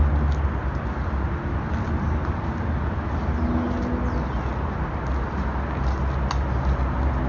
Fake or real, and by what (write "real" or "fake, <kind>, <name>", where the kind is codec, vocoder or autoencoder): real